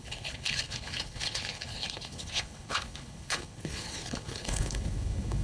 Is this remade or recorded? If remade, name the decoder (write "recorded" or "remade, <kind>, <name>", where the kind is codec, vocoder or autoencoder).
remade, codec, HILCodec